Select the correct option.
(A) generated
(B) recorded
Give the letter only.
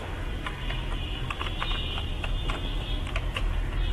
A